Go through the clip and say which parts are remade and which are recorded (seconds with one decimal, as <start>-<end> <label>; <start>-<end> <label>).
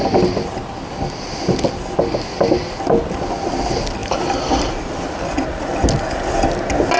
0.0-7.0 recorded